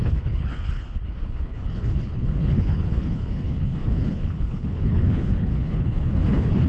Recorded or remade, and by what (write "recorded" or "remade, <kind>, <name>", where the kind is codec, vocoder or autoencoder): remade, codec, HILCodec